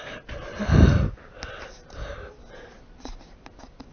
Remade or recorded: recorded